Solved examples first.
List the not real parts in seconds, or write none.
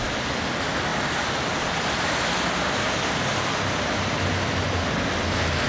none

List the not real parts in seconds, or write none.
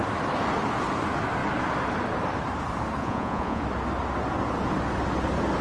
3.0-3.6 (vocoder, Vocos)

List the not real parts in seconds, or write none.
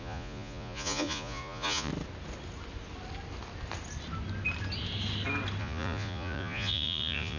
0.0-1.9 (vocoder, Vocos); 5.6-7.4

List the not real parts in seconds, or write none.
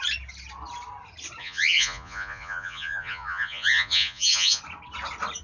1.4-4.6 (vocoder, Vocos)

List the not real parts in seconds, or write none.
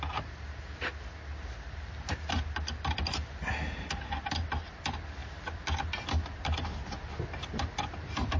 none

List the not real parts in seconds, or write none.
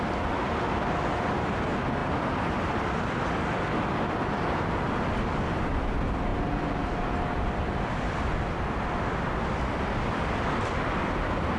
none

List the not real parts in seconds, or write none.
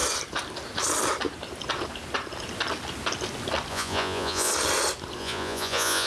3.7-4.5 (vocoder, Vocos); 5.2-6.1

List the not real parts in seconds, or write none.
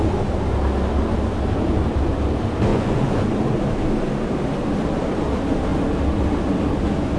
2.7-3.3 (vocoder, Vocos)